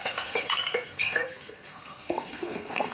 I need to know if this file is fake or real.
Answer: fake